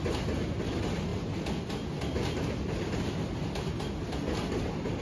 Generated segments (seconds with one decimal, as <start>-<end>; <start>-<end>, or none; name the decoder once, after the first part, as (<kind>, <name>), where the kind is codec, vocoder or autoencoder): none